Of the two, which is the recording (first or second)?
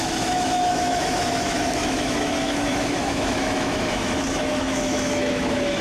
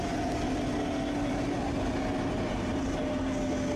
second